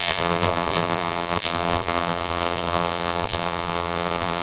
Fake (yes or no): yes